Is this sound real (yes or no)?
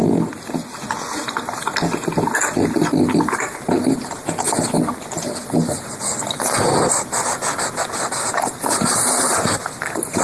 yes